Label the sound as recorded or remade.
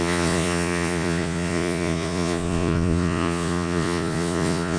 remade